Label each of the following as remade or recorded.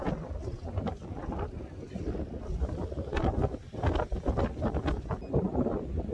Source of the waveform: recorded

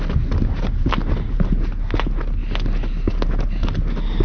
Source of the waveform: recorded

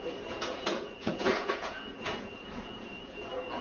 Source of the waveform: remade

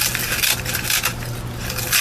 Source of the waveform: recorded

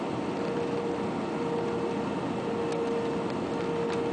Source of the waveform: recorded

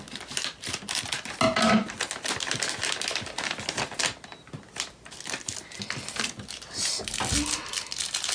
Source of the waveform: recorded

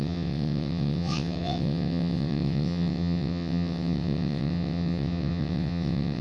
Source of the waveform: remade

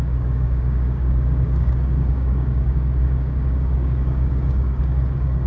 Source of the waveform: remade